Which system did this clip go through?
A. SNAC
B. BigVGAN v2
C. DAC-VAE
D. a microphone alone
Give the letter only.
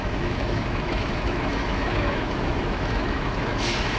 C